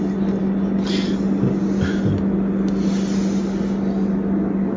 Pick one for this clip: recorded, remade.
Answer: recorded